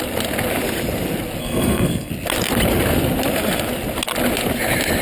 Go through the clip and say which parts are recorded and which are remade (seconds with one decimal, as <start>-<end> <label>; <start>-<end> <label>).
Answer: 0.0-1.4 recorded; 1.4-2.1 remade; 2.1-5.0 recorded